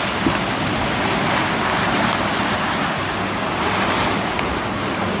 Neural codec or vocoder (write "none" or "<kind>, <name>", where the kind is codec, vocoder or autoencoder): none